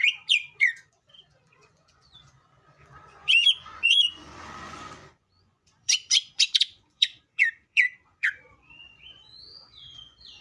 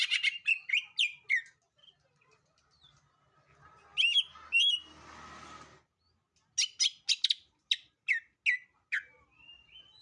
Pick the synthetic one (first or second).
first